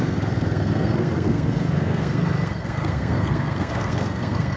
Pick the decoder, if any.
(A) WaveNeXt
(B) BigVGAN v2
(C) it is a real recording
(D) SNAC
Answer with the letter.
D